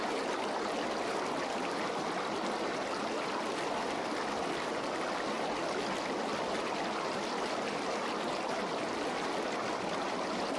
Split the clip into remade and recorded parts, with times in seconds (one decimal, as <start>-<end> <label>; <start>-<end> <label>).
0.0-10.6 recorded